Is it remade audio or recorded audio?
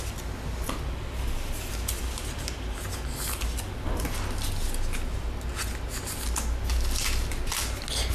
recorded